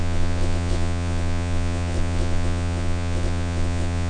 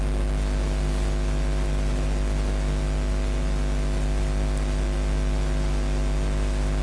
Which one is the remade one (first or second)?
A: first